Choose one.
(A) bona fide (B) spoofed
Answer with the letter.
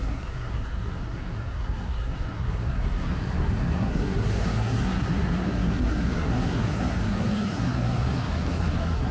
B